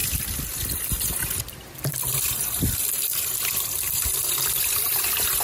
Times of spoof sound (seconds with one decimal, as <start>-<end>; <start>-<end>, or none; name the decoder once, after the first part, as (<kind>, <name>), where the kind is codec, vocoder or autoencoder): 0.0-3.1 (vocoder, BigVGAN v2); 4.5-5.4